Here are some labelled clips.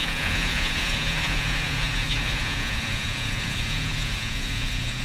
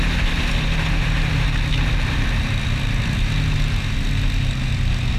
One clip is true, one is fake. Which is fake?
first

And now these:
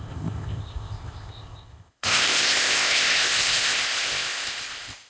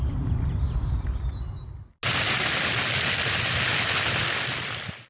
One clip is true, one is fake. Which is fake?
first